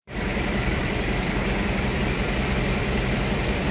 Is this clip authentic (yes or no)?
no